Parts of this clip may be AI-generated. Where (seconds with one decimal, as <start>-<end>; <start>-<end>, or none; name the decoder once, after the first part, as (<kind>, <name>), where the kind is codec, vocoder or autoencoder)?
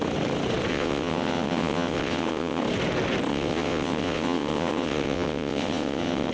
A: 0.7-2.6 (vocoder, WaveNeXt); 3.3-6.3